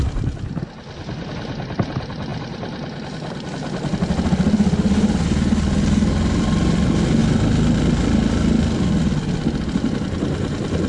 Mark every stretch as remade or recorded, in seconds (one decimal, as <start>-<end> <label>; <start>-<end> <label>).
0.0-10.9 recorded